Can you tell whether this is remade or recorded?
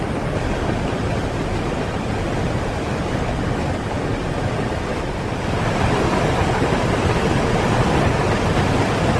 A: recorded